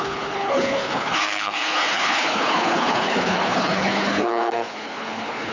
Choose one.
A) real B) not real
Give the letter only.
B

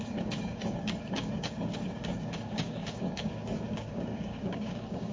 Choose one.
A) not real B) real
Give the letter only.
A